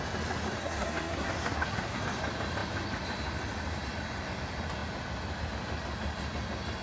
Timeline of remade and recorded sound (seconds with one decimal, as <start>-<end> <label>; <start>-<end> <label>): 0.0-0.6 recorded; 0.6-2.0 remade; 2.0-6.8 recorded